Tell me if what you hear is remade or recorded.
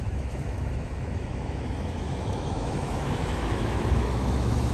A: remade